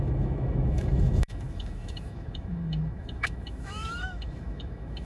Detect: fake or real fake